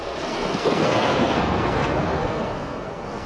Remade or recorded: remade